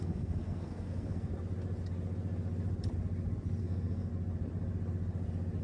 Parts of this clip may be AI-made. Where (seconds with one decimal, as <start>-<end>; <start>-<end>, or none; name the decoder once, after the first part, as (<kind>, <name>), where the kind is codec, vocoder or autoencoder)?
0.0-1.3 (codec, SNAC); 3.6-4.1